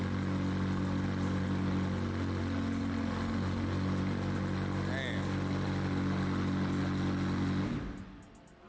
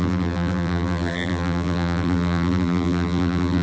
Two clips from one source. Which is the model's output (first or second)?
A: second